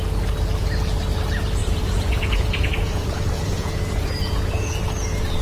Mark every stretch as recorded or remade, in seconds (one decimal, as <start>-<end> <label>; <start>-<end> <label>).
0.0-1.6 recorded; 1.6-4.8 remade; 4.8-5.4 recorded